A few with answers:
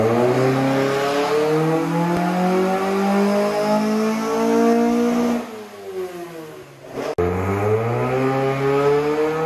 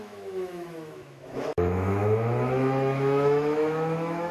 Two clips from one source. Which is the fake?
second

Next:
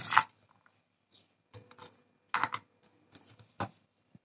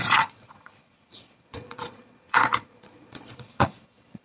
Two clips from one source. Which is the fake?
second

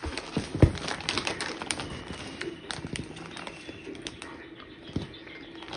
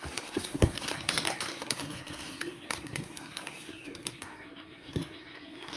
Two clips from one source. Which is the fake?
second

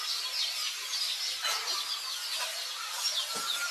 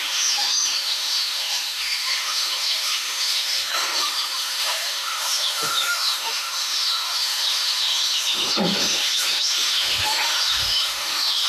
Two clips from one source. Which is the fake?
second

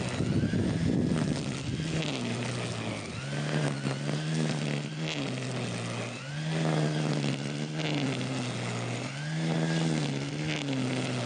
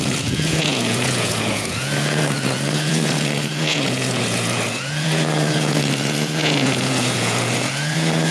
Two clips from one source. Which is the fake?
second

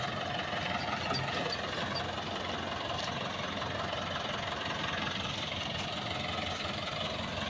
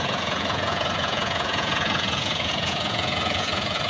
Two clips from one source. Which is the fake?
second